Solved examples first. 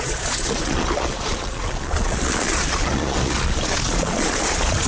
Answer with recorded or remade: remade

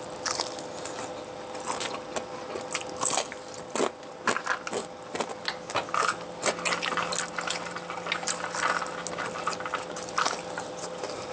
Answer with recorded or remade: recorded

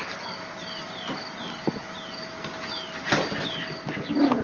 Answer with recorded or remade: recorded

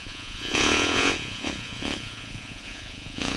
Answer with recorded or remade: remade